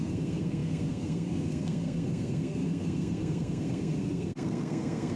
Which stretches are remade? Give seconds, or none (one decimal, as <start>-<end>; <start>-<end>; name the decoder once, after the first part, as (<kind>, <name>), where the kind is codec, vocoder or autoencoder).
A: 0.0-5.2 (codec, SNAC)